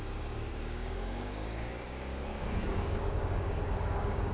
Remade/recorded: remade